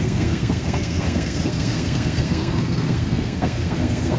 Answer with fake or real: fake